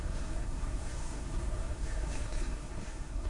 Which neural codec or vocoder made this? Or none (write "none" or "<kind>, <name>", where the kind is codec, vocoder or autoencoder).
codec, SNAC